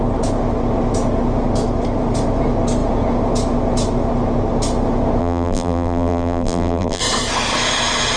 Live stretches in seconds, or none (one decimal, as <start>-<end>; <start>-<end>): 0.0-5.2; 7.0-8.2